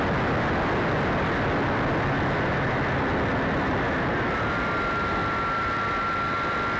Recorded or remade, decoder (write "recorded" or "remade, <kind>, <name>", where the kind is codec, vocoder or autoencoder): recorded